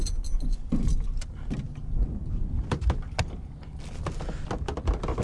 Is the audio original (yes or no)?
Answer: yes